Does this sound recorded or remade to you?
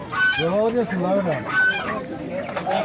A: recorded